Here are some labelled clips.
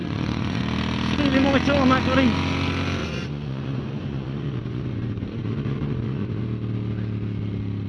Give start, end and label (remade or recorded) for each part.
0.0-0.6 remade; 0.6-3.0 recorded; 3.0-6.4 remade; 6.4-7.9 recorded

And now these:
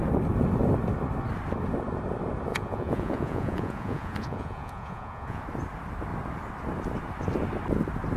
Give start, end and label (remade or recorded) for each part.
0.0-2.5 recorded; 2.5-5.4 remade; 5.4-8.2 recorded

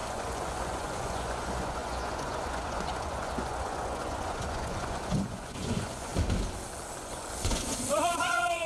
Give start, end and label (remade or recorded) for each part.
0.0-6.1 remade; 6.1-7.0 recorded; 7.0-8.7 remade

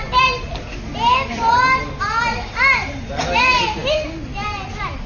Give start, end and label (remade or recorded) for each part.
0.0-5.1 recorded

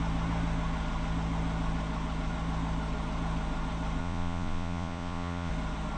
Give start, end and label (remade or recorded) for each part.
0.0-4.0 recorded; 4.0-5.5 remade; 5.5-6.0 recorded

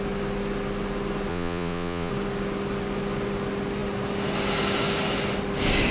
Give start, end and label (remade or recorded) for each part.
0.0-1.3 recorded; 1.3-2.1 remade; 2.1-5.9 recorded

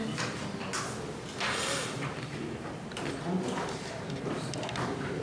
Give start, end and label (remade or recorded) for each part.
0.0-5.2 recorded